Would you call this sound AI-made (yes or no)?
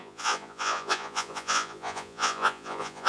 yes